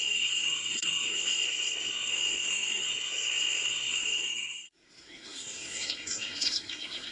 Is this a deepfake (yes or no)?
yes